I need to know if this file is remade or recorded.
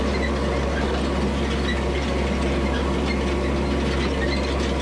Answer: recorded